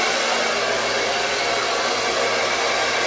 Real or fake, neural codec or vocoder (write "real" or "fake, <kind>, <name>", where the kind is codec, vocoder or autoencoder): real